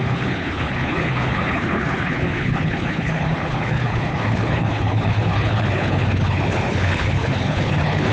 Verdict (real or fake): fake